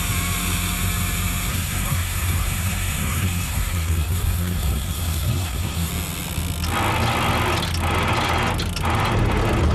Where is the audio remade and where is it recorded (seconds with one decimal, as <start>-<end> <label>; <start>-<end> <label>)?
0.0-1.5 recorded; 1.5-5.9 remade; 5.9-9.7 recorded